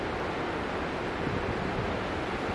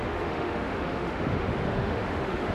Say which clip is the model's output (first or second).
second